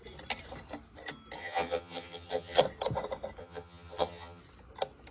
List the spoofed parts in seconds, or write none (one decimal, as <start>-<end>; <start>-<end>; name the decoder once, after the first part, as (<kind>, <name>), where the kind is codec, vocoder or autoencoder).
1.4-2.6 (vocoder, HiFi-GAN); 3.4-4.4